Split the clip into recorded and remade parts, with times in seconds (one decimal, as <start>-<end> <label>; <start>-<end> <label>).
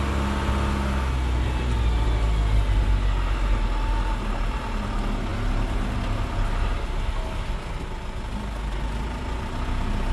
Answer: 0.0-10.1 recorded